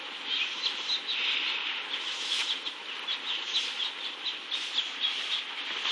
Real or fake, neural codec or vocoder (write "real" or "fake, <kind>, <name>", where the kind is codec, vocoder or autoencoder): real